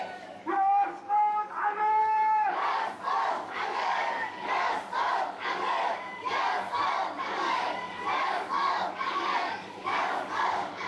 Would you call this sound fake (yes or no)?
yes